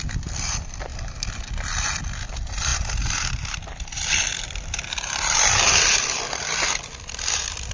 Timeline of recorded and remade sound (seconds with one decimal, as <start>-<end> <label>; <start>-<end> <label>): 0.0-0.9 remade; 0.9-2.3 recorded; 2.3-7.7 remade

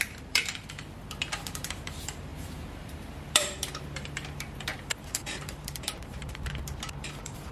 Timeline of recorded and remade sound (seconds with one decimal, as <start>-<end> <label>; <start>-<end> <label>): 0.0-7.5 remade

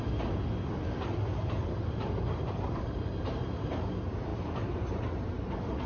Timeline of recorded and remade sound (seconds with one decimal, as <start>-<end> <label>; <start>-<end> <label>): 0.0-1.3 recorded; 1.3-3.7 remade; 3.7-4.3 recorded; 4.3-5.4 remade; 5.4-5.9 recorded